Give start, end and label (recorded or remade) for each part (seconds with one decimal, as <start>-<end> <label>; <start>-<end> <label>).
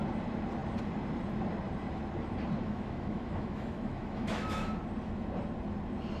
0.0-2.6 recorded; 2.6-4.8 remade; 4.8-6.2 recorded